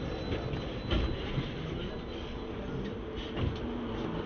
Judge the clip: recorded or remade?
recorded